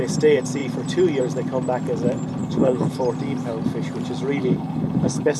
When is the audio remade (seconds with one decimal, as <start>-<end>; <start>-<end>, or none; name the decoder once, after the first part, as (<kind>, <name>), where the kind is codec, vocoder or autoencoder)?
2.4-3.0 (codec, HILCodec); 4.4-5.4